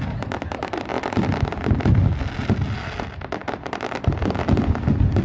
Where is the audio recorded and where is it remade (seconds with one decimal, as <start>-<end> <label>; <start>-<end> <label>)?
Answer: 0.0-5.2 recorded